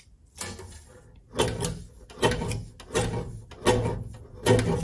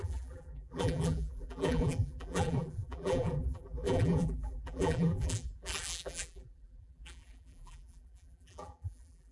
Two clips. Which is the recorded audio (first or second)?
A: first